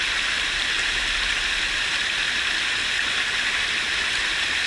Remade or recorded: recorded